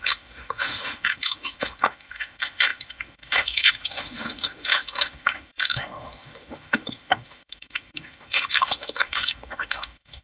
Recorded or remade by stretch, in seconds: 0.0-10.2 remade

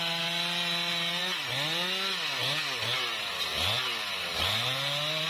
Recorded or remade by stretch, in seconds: 0.0-5.3 recorded

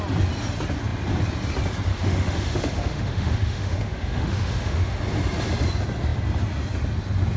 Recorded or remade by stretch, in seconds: 0.0-1.9 recorded; 1.9-5.0 remade; 5.0-7.4 recorded

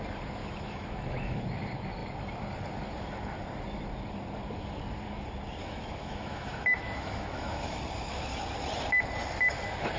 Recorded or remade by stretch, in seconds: 0.0-0.4 recorded; 0.4-1.4 remade; 1.4-5.6 recorded; 5.6-7.8 remade; 7.8-10.0 recorded

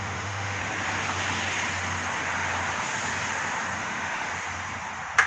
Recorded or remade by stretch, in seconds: 0.0-0.6 remade; 0.6-3.8 recorded; 3.8-4.3 remade; 4.3-5.3 recorded

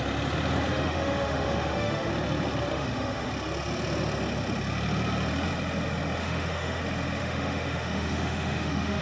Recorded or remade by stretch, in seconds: 0.0-0.7 recorded; 0.7-2.1 remade; 2.1-2.7 recorded; 2.7-3.3 remade; 3.3-6.2 recorded; 6.2-6.8 remade; 6.8-7.2 recorded; 7.2-9.0 remade

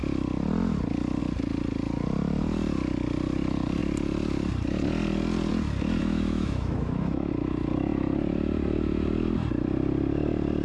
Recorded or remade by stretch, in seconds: 0.0-6.0 recorded; 6.0-7.3 remade; 7.3-10.6 recorded